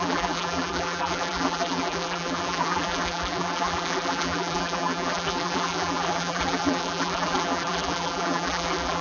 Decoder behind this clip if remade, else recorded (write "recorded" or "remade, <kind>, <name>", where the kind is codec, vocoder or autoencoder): remade, vocoder, BigVGAN v2